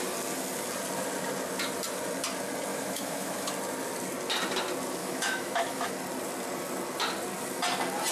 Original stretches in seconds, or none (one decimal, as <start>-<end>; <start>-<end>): 0.0-2.7; 3.5-5.0; 5.9-8.1